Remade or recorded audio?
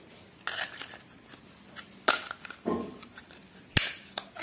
recorded